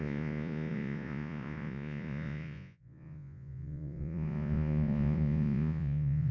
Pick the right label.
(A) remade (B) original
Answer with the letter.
A